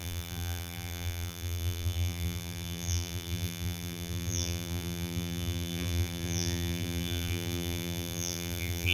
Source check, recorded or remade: remade